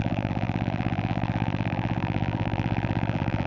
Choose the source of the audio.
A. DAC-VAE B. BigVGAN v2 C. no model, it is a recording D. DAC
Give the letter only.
B